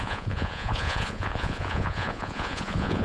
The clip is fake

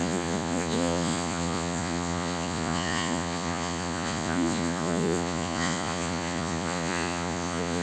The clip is fake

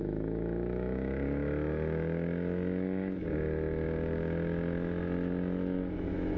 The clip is fake